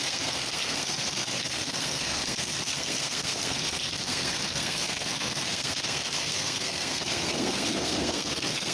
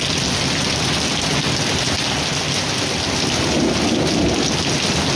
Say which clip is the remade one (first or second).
first